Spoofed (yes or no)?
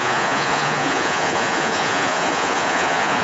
yes